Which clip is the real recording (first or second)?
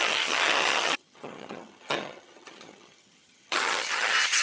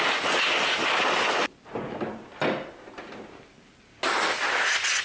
second